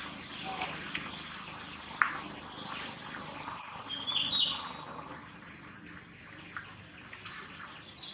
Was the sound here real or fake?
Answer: real